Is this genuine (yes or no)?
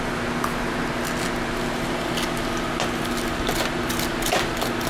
yes